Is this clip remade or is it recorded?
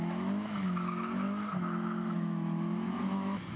remade